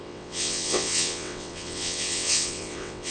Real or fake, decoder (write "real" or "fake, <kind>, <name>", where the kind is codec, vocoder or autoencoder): fake, vocoder, WaveNeXt